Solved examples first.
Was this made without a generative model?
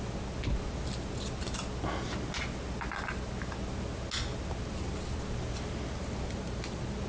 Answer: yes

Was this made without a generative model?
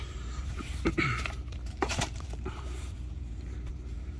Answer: no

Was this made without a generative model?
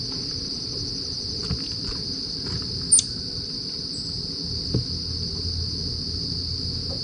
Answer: yes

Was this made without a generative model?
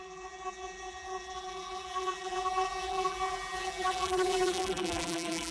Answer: no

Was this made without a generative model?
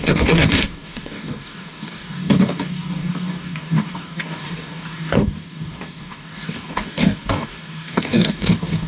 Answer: no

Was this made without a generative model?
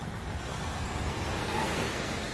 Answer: no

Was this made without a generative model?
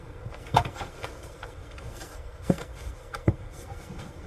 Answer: no